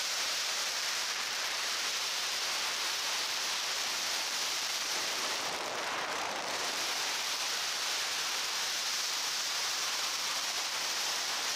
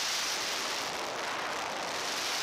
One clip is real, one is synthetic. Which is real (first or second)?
second